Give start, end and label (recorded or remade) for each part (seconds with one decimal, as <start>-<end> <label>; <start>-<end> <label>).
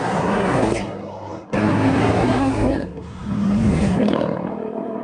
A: 0.0-5.0 remade